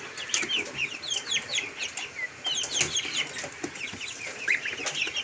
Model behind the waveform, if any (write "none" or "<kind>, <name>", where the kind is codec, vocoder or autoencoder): none